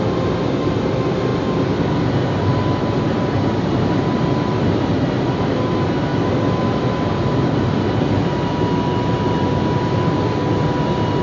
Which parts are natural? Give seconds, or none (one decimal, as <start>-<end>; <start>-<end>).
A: 0.0-11.2